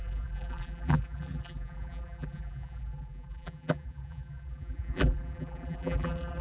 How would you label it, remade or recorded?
remade